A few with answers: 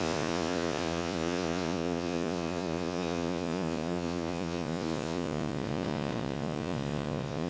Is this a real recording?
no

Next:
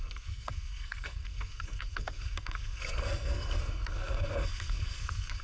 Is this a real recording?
no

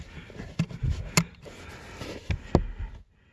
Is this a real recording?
yes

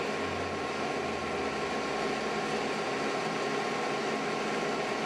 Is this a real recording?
yes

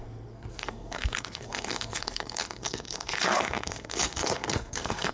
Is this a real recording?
no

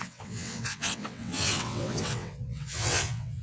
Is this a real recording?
no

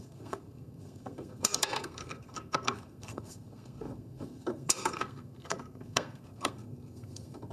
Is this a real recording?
no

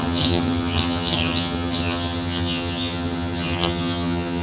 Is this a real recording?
no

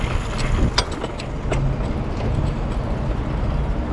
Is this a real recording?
yes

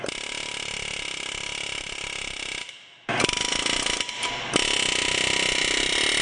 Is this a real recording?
yes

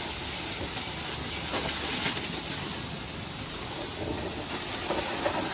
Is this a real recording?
yes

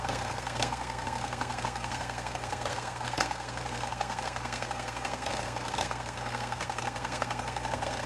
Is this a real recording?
no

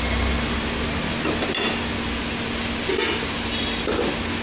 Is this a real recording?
yes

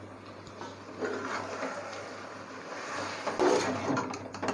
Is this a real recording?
yes